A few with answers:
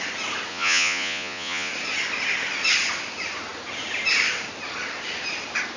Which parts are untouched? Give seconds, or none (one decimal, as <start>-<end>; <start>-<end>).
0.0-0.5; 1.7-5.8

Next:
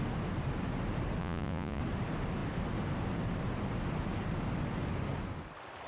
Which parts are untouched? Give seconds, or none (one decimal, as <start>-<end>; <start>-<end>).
0.0-1.2; 1.8-5.9

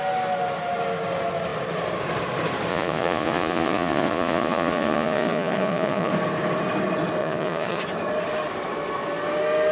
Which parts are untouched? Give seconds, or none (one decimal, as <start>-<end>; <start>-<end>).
0.0-2.7; 6.1-7.2; 7.8-9.7

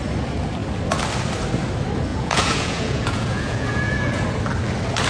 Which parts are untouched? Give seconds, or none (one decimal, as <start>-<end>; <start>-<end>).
0.0-2.1; 4.2-5.1

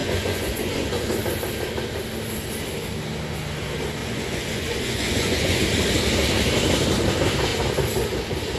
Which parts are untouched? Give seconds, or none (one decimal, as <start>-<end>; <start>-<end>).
1.1-4.0; 5.6-8.6

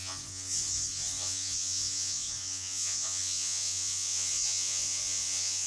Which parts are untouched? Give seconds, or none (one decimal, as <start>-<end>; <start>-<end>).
none